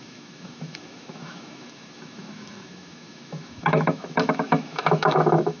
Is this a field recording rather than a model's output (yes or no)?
no